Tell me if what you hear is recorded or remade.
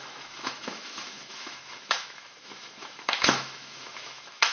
remade